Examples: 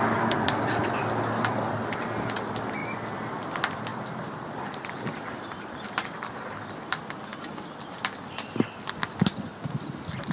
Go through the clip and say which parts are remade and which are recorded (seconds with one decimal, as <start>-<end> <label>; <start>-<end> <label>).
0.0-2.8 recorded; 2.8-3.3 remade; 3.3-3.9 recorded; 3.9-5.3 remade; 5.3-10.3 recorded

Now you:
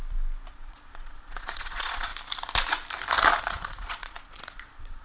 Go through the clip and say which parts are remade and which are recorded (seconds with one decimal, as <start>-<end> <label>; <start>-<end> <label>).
0.0-0.5 recorded; 0.5-2.1 remade; 2.1-3.4 recorded; 3.4-5.0 remade

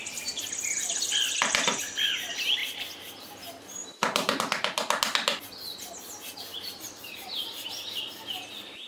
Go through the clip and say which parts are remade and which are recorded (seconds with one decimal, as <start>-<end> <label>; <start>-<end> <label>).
0.0-3.8 recorded; 3.8-4.4 remade; 4.4-6.5 recorded; 6.5-7.4 remade; 7.4-8.9 recorded

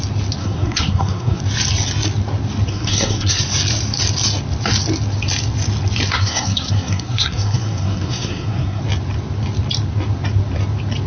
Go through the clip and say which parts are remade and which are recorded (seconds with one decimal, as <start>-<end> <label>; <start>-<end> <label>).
0.0-0.4 recorded; 0.4-1.4 remade; 1.4-2.7 recorded; 2.7-3.4 remade; 3.4-6.1 recorded; 6.1-8.8 remade; 8.8-11.1 recorded